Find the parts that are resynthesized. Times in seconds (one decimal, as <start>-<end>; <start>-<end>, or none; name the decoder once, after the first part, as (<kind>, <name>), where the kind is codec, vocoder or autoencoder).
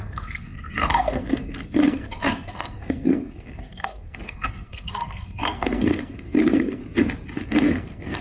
0.0-6.8 (codec, SNAC); 7.4-8.2